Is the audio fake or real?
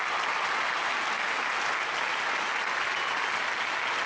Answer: real